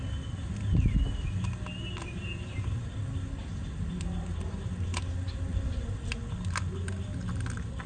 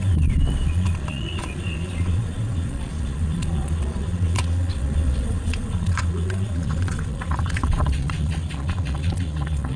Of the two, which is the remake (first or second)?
second